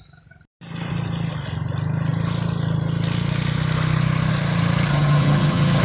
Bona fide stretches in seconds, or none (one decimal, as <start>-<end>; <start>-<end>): 0.0-4.9